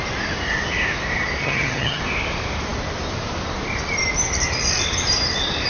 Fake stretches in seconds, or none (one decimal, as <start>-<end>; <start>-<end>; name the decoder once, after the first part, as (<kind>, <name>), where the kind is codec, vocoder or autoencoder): 1.4-2.0 (vocoder, HiFi-GAN)